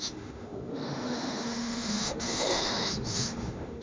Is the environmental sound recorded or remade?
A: remade